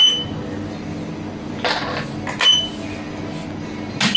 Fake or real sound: real